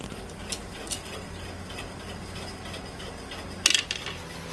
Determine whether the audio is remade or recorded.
recorded